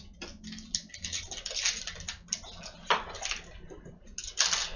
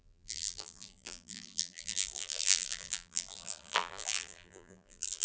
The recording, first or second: first